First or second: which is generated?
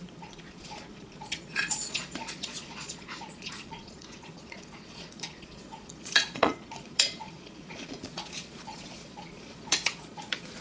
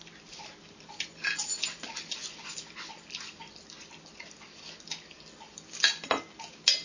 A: first